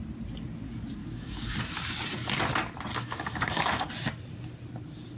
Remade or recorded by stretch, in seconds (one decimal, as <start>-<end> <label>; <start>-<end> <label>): 0.0-1.0 recorded; 1.0-1.6 remade; 1.6-2.9 recorded; 2.9-3.9 remade; 3.9-5.2 recorded